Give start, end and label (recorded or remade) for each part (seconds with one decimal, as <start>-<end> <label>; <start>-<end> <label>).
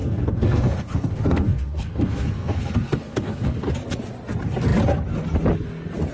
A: 0.0-3.7 remade; 3.7-6.1 recorded